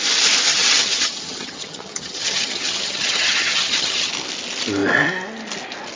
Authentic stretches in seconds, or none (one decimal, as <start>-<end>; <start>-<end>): 0.0-0.5; 4.1-6.0